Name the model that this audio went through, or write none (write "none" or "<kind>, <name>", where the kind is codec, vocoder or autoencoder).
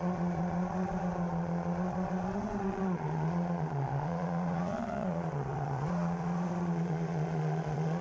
vocoder, Vocos